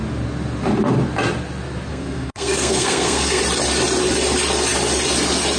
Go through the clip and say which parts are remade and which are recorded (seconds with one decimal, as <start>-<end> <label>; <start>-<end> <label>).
0.0-1.9 recorded; 1.9-3.4 remade; 3.4-5.6 recorded